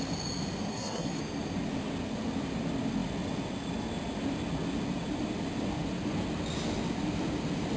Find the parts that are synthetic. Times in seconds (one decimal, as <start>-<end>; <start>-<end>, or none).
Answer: 0.7-1.2